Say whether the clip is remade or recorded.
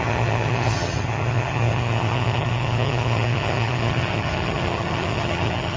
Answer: remade